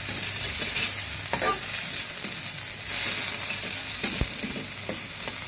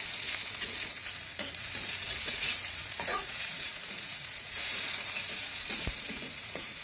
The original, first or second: first